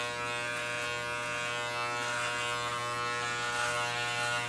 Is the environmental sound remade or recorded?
recorded